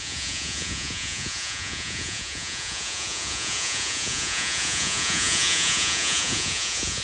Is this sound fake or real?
fake